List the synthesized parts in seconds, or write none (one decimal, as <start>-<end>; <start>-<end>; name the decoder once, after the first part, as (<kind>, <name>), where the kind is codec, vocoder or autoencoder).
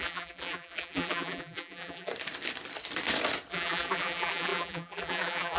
0.0-2.1 (vocoder, BigVGAN v2); 3.5-5.6